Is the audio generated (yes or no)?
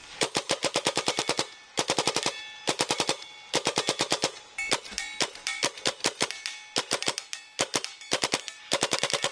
no